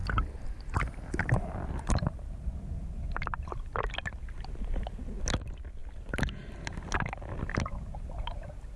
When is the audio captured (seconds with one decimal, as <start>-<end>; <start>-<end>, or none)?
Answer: 0.0-8.8